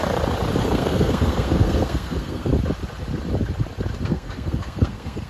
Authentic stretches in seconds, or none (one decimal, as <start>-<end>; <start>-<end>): 0.0-0.6; 2.5-4.0